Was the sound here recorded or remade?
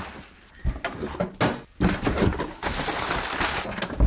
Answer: recorded